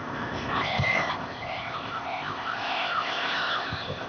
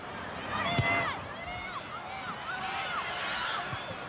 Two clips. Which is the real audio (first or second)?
second